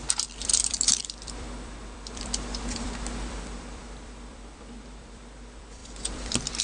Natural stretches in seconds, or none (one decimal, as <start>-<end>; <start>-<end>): none